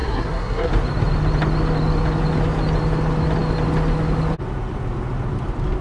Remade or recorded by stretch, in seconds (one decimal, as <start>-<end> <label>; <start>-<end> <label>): 0.0-0.7 remade; 0.7-5.8 recorded